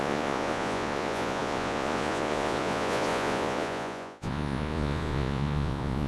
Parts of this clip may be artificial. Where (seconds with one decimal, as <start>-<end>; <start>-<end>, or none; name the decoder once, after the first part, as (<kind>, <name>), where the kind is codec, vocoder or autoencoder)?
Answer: 0.0-6.1 (vocoder, Vocos)